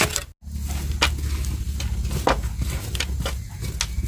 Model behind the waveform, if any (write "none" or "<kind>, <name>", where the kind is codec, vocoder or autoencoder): none